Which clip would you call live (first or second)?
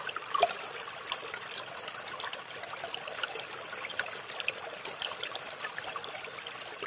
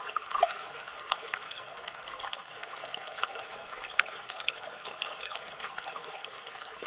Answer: first